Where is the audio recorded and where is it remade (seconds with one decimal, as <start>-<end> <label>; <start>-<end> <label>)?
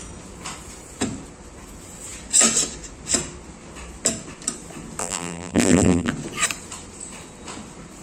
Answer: 0.0-5.0 recorded; 5.0-6.1 remade; 6.1-8.0 recorded